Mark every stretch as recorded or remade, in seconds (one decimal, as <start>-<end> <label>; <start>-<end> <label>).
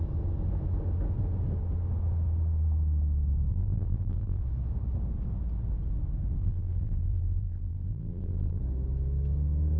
0.0-3.5 recorded; 3.5-4.4 remade; 4.4-6.4 recorded; 6.4-8.6 remade; 8.6-9.8 recorded